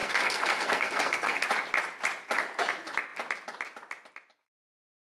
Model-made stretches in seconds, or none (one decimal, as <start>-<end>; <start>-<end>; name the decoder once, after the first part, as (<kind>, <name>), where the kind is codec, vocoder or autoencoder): 0.0-1.4 (codec, SNAC)